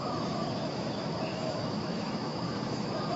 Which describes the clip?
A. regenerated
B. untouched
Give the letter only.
A